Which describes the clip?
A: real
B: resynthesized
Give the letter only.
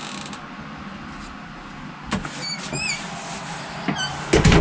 A